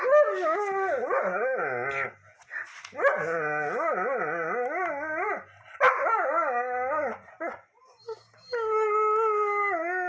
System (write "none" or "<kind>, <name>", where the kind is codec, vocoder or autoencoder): none